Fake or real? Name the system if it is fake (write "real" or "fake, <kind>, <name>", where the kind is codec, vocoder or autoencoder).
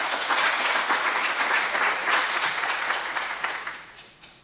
fake, vocoder, Vocos